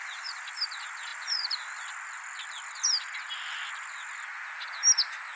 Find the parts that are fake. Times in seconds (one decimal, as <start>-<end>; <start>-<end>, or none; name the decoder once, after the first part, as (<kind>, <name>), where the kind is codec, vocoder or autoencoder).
none